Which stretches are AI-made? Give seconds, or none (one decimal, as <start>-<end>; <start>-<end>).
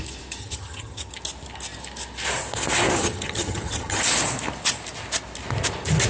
0.4-1.1; 3.0-4.0